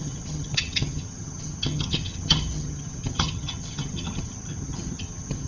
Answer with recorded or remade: remade